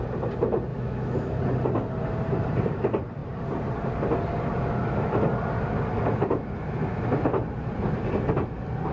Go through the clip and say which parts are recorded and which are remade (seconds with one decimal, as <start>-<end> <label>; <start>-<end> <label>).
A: 0.0-0.7 recorded; 0.7-1.4 remade; 1.4-8.9 recorded